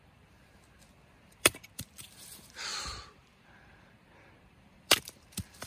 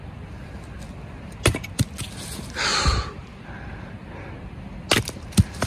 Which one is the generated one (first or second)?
first